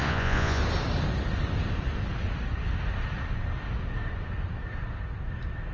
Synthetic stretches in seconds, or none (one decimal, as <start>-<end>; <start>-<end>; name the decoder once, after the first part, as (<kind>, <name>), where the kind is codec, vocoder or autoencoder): 0.0-0.6 (vocoder, Vocos)